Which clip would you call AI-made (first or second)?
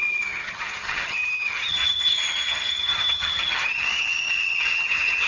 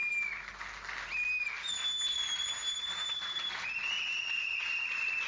first